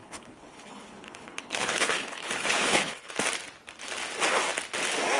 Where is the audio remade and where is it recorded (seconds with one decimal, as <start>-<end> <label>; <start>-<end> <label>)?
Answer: 0.0-3.1 remade; 3.1-5.2 recorded